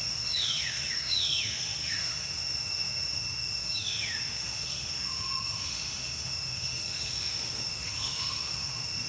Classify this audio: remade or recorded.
remade